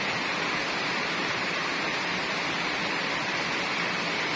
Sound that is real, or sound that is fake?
real